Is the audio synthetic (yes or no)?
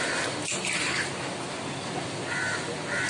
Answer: no